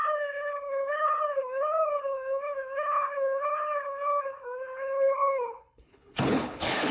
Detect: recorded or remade remade